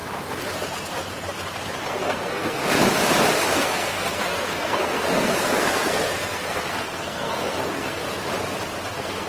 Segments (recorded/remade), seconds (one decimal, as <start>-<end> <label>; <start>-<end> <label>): 0.0-1.8 recorded; 1.8-2.6 remade; 2.6-3.5 recorded; 3.5-8.0 remade; 8.0-8.9 recorded; 8.9-9.3 remade